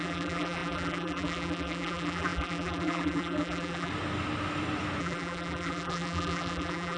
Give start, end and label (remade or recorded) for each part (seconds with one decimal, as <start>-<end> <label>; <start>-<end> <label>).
0.0-3.9 remade; 3.9-5.0 recorded; 5.0-7.0 remade